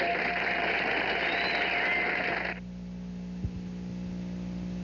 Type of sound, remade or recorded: recorded